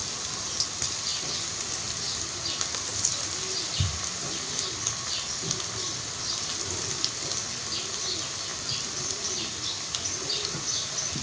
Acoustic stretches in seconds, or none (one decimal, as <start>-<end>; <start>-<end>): 0.0-8.5; 9.1-11.2

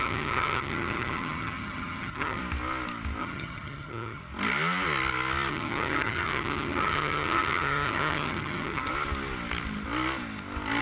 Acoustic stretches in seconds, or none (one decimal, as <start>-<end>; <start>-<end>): 2.4-3.2; 4.2-5.5; 8.9-10.8